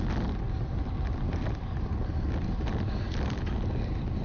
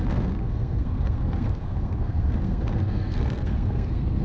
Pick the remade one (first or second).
second